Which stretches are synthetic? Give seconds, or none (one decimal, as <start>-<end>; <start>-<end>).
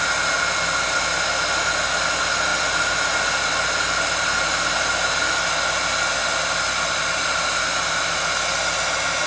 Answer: none